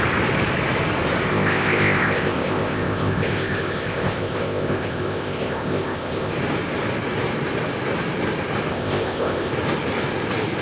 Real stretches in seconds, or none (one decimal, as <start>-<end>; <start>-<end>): 0.0-1.3; 6.3-8.7; 9.5-10.6